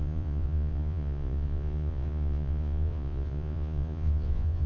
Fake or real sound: fake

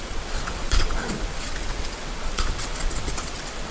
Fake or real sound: fake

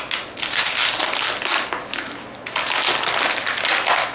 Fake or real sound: real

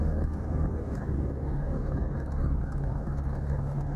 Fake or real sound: fake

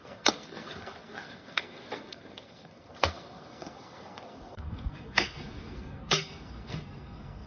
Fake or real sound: fake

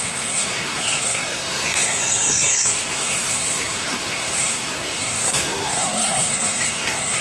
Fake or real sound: fake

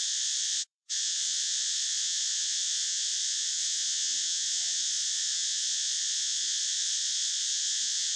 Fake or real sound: fake